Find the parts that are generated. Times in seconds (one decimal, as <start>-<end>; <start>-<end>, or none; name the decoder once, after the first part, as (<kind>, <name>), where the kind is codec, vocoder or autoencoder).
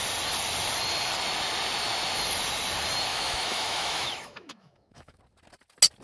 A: 3.1-5.2 (autoencoder, DAC-VAE)